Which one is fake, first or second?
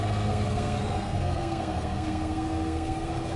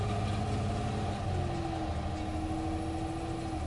first